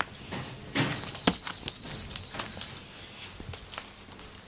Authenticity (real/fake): real